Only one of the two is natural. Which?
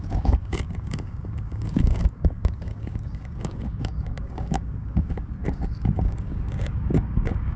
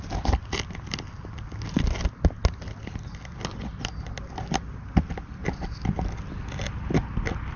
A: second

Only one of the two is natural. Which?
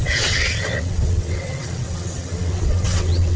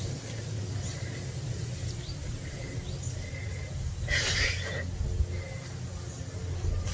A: second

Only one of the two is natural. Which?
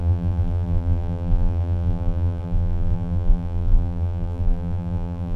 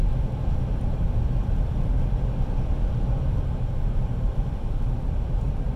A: second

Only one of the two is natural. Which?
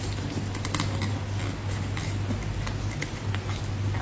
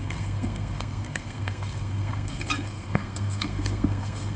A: first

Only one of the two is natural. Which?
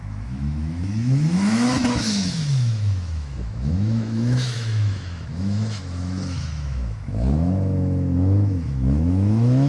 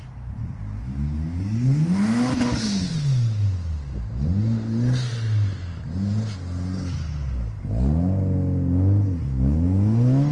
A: second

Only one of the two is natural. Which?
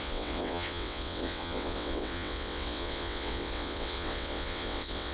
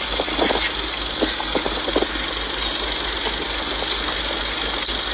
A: second